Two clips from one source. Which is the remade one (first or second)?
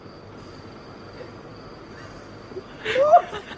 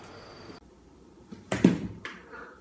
second